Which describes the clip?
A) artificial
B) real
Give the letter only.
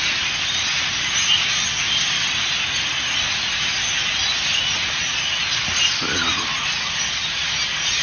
B